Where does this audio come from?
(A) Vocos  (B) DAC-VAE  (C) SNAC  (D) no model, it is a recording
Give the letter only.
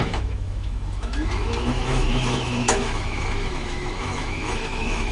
B